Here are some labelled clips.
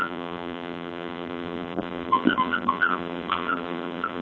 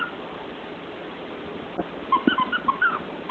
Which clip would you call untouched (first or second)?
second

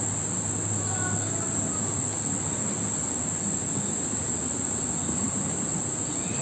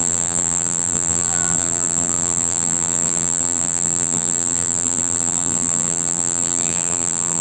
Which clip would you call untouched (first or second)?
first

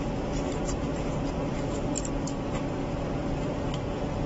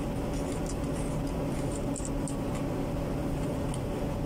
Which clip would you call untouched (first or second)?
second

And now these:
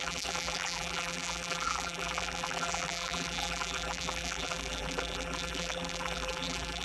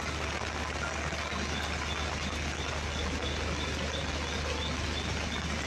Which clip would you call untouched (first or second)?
second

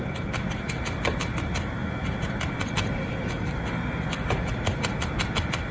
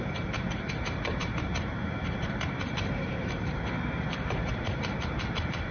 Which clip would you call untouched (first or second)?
first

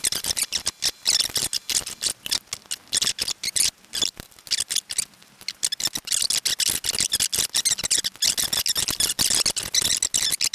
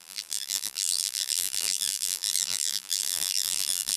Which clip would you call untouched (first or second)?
first